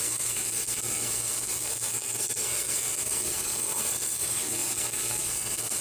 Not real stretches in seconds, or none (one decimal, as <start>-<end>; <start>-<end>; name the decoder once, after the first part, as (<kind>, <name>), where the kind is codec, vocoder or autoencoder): 0.0-5.8 (codec, SNAC)